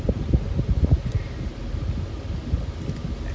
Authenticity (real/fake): real